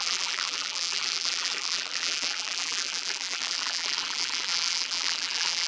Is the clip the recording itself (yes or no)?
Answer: no